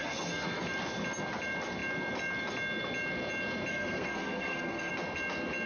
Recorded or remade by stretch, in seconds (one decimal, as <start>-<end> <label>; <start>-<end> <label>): 0.0-0.6 remade; 0.6-3.7 recorded; 3.7-4.9 remade; 4.9-5.7 recorded